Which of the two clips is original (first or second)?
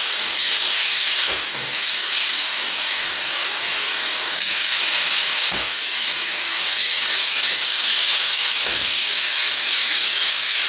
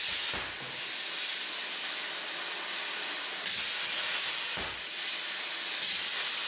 second